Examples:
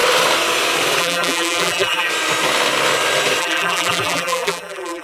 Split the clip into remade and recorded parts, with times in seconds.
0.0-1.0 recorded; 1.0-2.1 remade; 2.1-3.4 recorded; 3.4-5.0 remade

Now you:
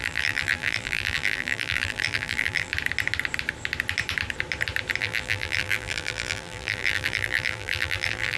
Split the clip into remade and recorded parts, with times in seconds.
0.0-2.7 remade; 2.7-5.0 recorded; 5.0-8.4 remade

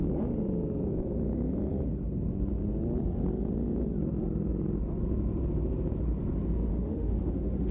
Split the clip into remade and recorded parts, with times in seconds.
0.0-6.7 recorded; 6.7-7.7 remade

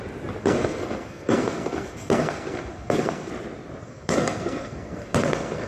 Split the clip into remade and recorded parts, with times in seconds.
0.0-0.4 recorded; 0.4-3.3 remade; 3.3-3.8 recorded; 3.8-5.7 remade

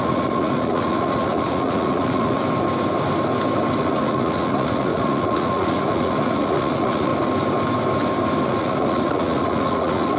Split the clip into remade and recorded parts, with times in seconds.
0.0-2.4 remade; 2.4-3.8 recorded; 3.8-7.1 remade; 7.1-8.4 recorded; 8.4-10.2 remade